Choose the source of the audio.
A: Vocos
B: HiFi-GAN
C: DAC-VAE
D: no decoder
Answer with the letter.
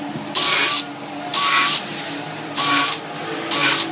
D